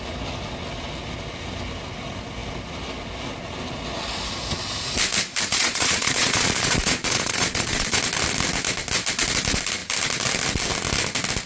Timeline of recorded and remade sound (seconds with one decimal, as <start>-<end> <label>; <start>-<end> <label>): 0.0-5.5 recorded; 5.5-8.0 remade; 8.0-11.5 recorded